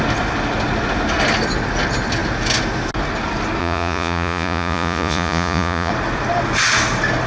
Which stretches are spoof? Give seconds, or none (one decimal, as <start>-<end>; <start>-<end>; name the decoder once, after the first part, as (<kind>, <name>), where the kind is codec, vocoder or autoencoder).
3.6-5.9 (vocoder, Vocos)